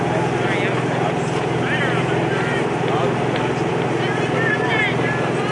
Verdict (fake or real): real